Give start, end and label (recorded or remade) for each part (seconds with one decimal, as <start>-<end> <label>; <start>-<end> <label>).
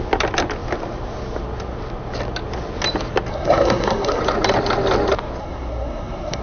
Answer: 0.0-3.3 recorded; 3.3-4.2 remade; 4.2-5.4 recorded; 5.4-6.4 remade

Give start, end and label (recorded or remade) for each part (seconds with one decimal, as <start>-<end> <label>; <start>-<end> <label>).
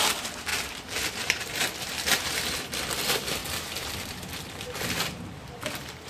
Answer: 0.0-6.1 remade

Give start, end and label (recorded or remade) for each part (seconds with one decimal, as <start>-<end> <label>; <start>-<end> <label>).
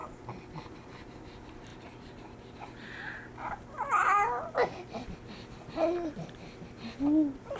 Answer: 0.0-7.6 recorded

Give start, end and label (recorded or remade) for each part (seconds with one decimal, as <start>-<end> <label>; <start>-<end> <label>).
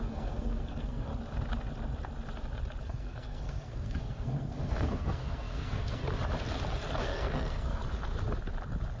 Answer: 0.0-1.1 remade; 1.1-2.8 recorded; 2.8-6.0 remade; 6.0-7.0 recorded; 7.0-7.8 remade; 7.8-9.0 recorded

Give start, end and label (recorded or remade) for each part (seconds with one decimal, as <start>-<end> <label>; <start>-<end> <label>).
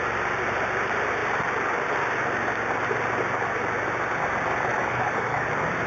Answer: 0.0-4.7 recorded; 4.7-5.5 remade; 5.5-5.9 recorded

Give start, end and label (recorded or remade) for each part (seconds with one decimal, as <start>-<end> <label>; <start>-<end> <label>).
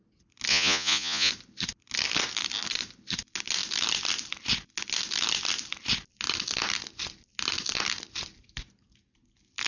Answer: 0.0-0.5 recorded; 0.5-1.3 remade; 1.3-9.7 recorded